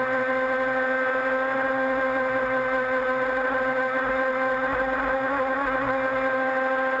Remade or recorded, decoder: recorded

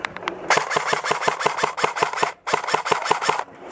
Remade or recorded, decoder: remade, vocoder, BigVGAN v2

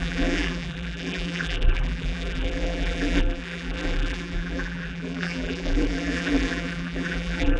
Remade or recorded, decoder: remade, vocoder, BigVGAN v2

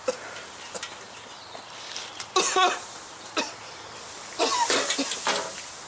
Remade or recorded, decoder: recorded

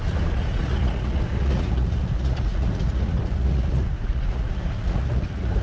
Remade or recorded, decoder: remade, vocoder, Vocos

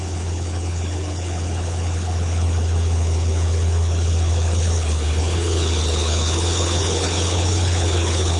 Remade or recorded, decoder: remade, codec, HILCodec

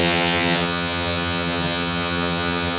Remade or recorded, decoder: remade, vocoder, HiFi-GAN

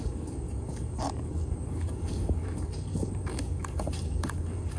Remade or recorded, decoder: remade, codec, DAC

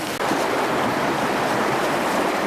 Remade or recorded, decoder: recorded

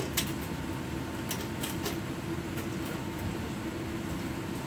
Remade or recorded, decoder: recorded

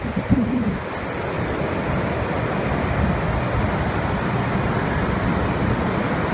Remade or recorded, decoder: recorded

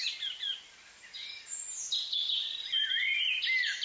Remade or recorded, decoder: recorded